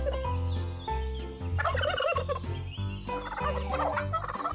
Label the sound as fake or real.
real